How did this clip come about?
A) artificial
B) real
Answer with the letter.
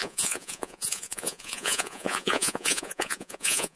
A